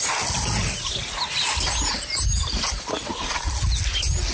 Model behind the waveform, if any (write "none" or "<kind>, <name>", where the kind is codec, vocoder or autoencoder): none